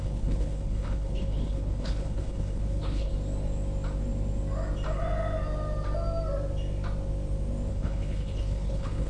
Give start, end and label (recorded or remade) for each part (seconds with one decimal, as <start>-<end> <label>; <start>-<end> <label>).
0.0-3.1 remade; 3.1-7.7 recorded; 7.7-9.1 remade